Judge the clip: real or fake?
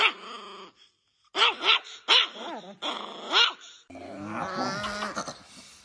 real